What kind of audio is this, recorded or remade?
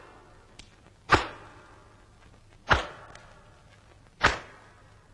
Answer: recorded